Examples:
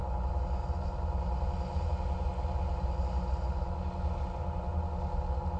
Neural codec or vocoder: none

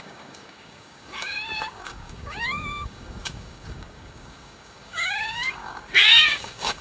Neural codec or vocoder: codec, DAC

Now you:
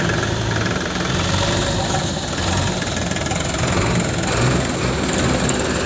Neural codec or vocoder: none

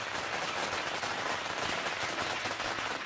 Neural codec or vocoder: none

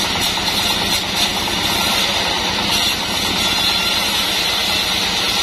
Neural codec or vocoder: none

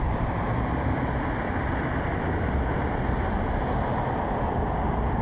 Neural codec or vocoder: none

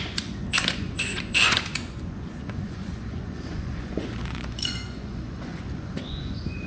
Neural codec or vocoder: vocoder, Vocos